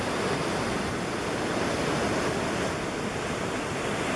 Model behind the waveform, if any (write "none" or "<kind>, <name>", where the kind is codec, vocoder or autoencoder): none